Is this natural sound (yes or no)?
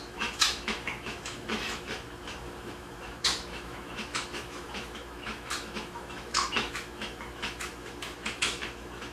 no